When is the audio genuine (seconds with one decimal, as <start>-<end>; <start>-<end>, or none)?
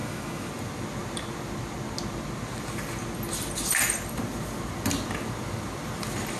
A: 0.5-6.4